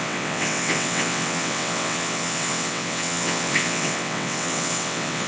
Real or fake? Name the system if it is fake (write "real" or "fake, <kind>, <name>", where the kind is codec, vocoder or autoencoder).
fake, vocoder, WaveNeXt